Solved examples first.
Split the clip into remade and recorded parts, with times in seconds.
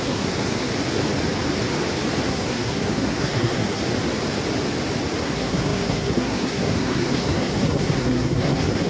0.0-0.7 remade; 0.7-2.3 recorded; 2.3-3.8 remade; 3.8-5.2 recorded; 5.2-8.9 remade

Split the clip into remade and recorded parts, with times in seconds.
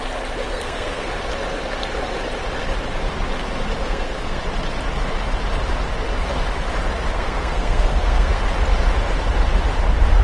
0.0-0.5 recorded; 0.5-1.1 remade; 1.1-3.8 recorded; 3.8-4.4 remade; 4.4-7.1 recorded; 7.1-8.4 remade; 8.4-10.2 recorded